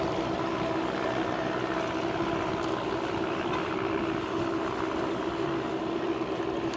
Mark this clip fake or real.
real